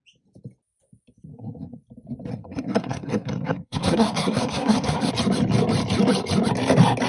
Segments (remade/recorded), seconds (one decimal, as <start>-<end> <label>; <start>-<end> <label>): 0.0-1.3 recorded; 1.3-1.8 remade; 1.8-2.3 recorded; 2.3-5.1 remade; 5.1-7.1 recorded